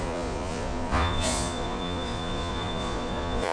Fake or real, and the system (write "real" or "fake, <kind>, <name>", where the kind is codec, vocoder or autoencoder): fake, vocoder, Vocos